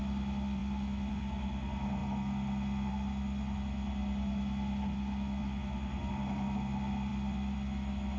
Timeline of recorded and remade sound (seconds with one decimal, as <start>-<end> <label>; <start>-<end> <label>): 0.0-8.2 recorded